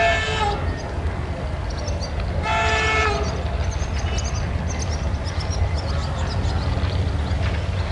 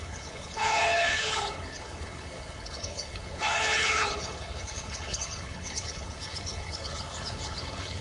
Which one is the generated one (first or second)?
second